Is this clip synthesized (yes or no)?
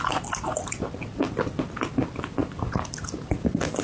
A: no